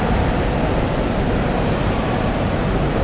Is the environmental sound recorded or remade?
recorded